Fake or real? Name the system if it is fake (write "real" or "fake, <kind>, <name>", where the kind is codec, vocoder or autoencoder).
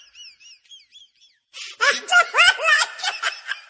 real